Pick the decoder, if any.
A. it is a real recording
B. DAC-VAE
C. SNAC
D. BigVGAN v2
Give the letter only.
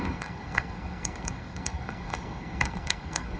C